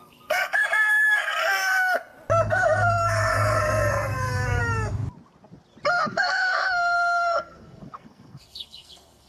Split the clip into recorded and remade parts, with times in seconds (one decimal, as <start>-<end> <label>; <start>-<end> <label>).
0.0-2.0 remade; 2.0-2.5 recorded; 2.5-4.6 remade; 4.6-5.9 recorded; 5.9-9.3 remade